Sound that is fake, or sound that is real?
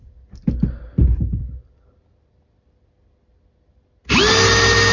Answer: real